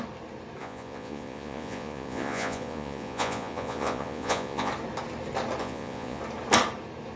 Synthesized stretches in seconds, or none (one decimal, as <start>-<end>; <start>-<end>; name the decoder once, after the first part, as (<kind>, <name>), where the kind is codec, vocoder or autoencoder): 0.6-4.7 (vocoder, Vocos); 5.6-6.2